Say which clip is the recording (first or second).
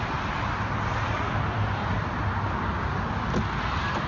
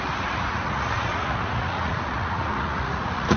first